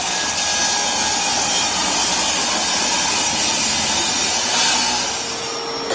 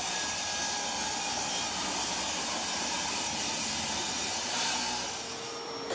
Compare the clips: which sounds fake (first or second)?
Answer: second